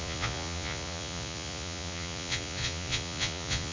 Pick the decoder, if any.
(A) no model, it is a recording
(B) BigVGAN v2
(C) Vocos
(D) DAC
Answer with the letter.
C